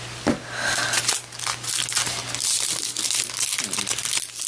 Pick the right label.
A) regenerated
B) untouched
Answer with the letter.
B